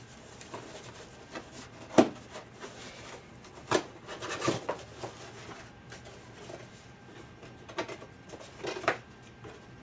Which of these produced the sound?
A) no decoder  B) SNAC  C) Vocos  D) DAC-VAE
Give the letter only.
A